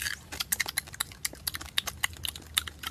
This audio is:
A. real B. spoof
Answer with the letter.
A